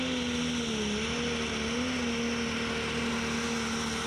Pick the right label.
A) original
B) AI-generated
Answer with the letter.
A